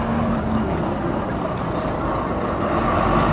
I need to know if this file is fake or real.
real